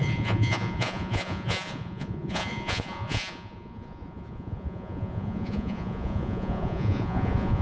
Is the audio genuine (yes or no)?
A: no